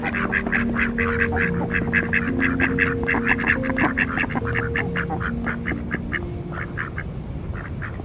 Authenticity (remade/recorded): recorded